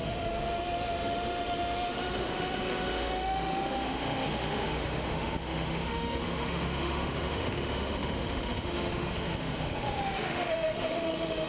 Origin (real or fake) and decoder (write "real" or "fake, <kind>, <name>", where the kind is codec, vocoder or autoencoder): fake, autoencoder, DAC-VAE